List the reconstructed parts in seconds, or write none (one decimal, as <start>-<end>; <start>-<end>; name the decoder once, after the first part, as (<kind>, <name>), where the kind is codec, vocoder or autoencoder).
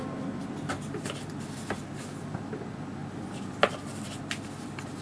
none